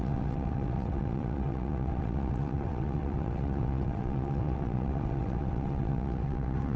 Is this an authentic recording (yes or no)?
no